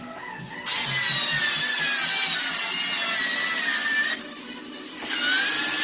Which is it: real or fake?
real